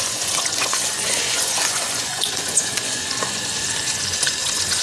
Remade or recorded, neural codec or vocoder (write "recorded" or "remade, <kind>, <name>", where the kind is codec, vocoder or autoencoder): remade, vocoder, Vocos